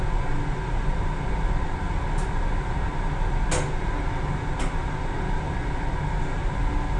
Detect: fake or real real